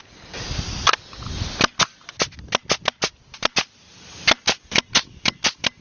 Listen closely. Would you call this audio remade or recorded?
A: recorded